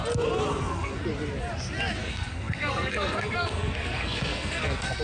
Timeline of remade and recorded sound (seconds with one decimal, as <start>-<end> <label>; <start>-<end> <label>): 0.0-0.5 recorded; 0.5-1.0 remade; 1.0-2.0 recorded; 2.0-5.0 remade